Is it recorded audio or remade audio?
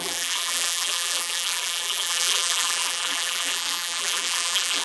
remade